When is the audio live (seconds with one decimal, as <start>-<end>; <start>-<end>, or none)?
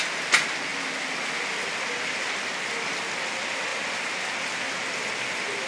0.0-5.7